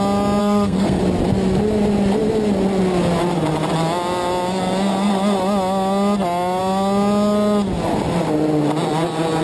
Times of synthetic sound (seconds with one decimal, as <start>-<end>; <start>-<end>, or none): 0.4-1.0